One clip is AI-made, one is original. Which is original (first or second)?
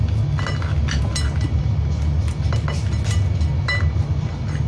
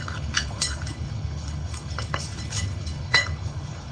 first